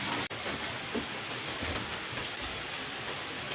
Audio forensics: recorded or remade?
recorded